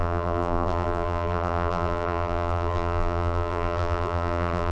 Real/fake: fake